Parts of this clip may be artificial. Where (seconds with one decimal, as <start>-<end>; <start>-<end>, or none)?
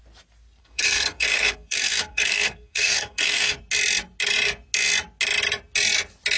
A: 0.6-3.6